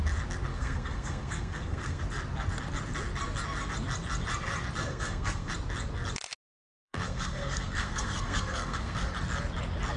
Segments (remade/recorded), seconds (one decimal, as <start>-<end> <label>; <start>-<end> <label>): 0.0-0.5 recorded; 0.5-2.0 remade; 2.0-4.8 recorded; 4.8-5.5 remade; 5.5-6.6 recorded; 6.6-9.1 remade; 9.1-10.0 recorded